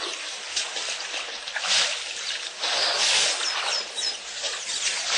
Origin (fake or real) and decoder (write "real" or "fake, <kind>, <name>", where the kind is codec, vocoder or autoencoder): real